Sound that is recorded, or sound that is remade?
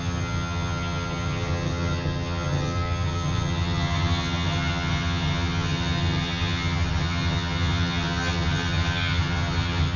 remade